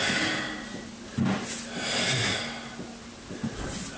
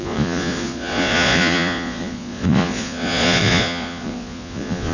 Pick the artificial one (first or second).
second